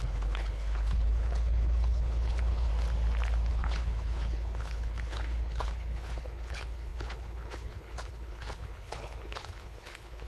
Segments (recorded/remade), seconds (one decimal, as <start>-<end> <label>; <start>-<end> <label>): 0.0-2.7 remade; 2.7-3.5 recorded; 3.5-10.3 remade